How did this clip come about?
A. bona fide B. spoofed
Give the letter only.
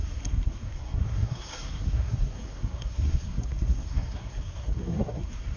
B